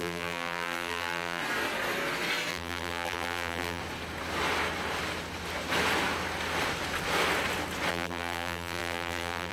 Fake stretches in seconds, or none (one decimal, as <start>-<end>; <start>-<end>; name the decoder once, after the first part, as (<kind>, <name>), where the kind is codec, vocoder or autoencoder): 0.0-1.4 (vocoder, BigVGAN v2); 2.5-3.8; 7.9-9.5